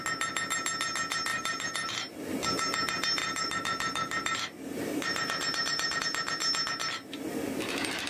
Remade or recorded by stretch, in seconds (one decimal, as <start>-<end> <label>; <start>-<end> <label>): 0.0-1.3 recorded; 1.3-2.1 remade; 2.1-3.2 recorded; 3.2-6.0 remade; 6.0-8.1 recorded